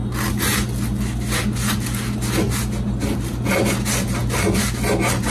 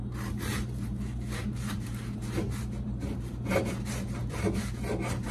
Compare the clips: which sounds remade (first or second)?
second